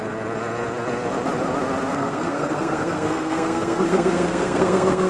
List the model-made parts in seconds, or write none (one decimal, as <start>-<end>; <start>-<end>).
1.9-5.1